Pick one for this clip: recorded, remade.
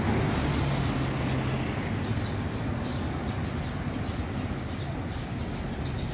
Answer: recorded